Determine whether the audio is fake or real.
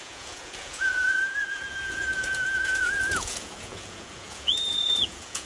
fake